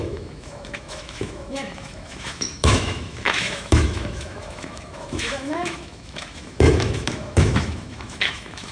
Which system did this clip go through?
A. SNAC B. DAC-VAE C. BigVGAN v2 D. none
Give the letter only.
B